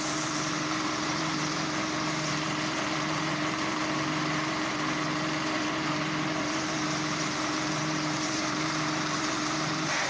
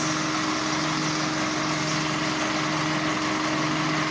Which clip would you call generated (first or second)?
first